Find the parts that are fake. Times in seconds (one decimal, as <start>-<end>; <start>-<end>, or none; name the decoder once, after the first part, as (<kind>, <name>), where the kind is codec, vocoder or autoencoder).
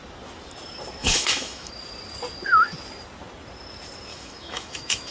1.0-1.7 (autoencoder, DAC-VAE); 4.1-5.1